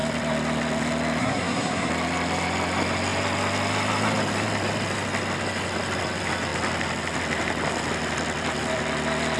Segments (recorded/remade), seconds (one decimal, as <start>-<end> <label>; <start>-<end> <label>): 0.0-1.2 recorded; 1.2-1.9 remade; 1.9-9.4 recorded